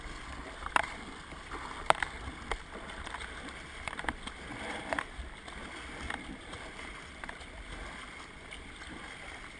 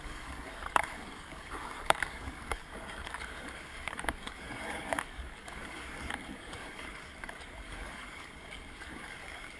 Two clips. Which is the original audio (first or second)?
first